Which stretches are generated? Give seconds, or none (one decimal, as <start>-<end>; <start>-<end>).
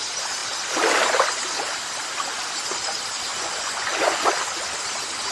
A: 3.3-4.3